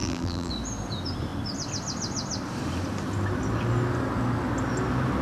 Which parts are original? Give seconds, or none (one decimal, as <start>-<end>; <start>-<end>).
0.5-5.2